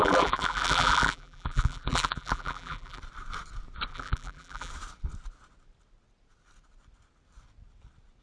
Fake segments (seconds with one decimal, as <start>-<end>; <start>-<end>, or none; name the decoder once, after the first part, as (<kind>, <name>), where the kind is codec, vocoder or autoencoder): 0.0-3.0 (vocoder, BigVGAN v2); 3.9-4.7

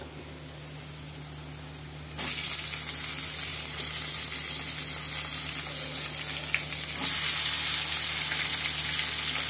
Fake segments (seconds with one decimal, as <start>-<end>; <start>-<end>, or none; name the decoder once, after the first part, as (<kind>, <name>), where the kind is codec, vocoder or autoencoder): 3.5-4.1 (vocoder, BigVGAN v2)